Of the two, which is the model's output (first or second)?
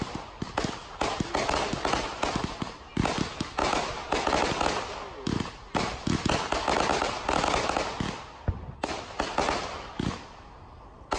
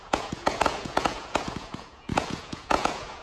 second